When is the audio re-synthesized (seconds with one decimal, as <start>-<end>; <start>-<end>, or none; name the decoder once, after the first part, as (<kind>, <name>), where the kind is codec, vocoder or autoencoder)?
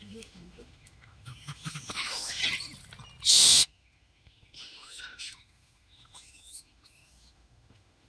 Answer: 0.0-2.4 (autoencoder, DAC-VAE); 3.3-8.1